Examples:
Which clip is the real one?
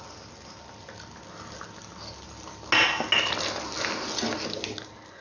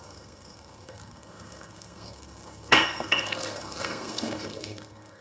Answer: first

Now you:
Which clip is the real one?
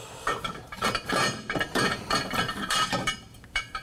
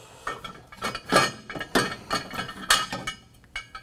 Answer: second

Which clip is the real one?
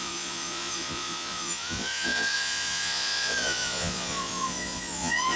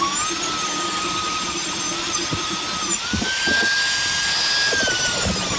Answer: second